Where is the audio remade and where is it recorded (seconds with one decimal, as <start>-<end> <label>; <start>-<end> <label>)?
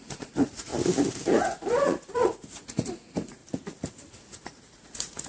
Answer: 0.0-0.7 remade; 0.7-1.4 recorded; 1.4-3.4 remade; 3.4-4.1 recorded; 4.1-5.3 remade